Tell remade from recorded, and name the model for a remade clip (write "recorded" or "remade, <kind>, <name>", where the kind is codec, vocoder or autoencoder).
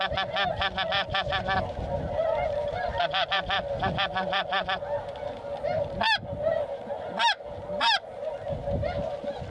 recorded